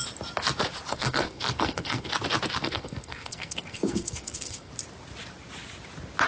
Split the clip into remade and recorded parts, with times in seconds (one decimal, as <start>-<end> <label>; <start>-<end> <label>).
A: 0.0-0.9 recorded; 0.9-2.1 remade; 2.1-2.6 recorded; 2.6-4.7 remade; 4.7-6.3 recorded